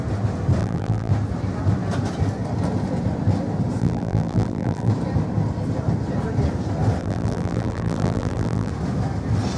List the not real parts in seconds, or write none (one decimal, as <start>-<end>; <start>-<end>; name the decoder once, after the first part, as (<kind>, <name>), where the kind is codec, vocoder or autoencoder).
0.6-1.1 (vocoder, BigVGAN v2); 3.8-4.9; 7.0-8.7